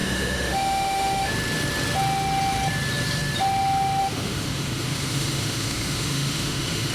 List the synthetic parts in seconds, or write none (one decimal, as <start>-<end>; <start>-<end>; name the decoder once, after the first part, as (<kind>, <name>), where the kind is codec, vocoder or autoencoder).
0.0-1.3 (autoencoder, DAC-VAE); 4.0-6.9